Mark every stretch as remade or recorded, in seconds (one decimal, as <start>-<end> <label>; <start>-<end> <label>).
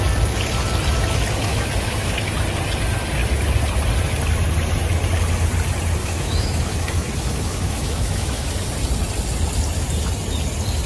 0.0-1.5 recorded; 1.5-2.3 remade; 2.3-6.0 recorded; 6.0-8.5 remade; 8.5-10.9 recorded